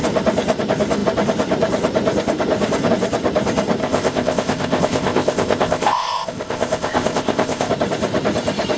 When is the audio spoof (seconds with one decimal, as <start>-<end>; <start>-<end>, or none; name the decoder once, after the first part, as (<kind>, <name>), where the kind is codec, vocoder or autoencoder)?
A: 3.8-7.7 (codec, ZipCodec)

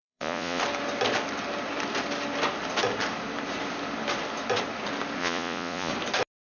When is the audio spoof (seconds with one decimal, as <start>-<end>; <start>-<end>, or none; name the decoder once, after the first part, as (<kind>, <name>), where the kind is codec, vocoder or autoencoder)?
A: 0.0-0.6 (vocoder, Vocos); 5.2-5.9

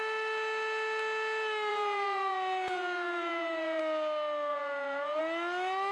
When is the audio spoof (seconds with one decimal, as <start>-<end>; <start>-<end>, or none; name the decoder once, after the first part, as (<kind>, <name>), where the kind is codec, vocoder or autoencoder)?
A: 1.7-3.8 (vocoder, Vocos); 4.5-5.2